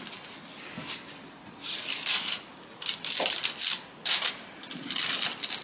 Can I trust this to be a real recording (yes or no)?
yes